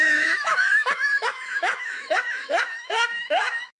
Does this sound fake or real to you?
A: fake